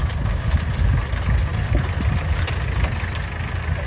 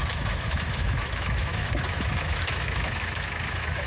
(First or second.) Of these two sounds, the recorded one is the first